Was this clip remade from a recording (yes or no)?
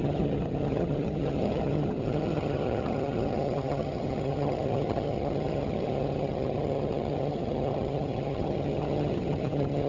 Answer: yes